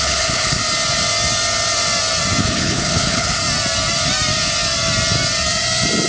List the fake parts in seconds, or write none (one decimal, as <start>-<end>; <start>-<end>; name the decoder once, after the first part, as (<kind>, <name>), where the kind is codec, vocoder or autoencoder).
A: 0.0-0.6 (codec, HILCodec); 2.4-3.4